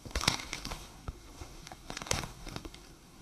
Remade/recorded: remade